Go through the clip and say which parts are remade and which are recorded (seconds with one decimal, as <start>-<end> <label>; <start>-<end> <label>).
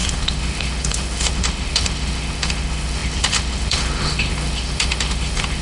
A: 0.0-5.6 remade